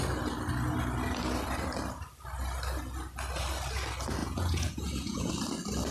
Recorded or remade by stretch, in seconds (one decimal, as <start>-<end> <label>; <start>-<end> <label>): 0.0-4.2 recorded; 4.2-5.3 remade; 5.3-5.9 recorded